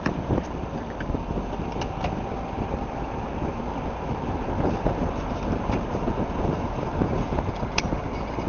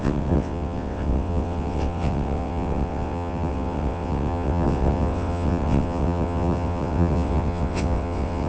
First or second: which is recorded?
first